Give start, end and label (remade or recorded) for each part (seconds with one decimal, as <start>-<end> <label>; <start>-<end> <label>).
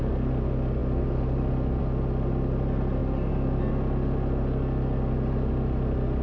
0.0-6.2 recorded